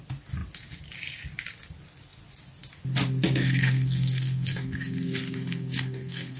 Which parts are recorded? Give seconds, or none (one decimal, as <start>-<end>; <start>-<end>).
0.0-3.4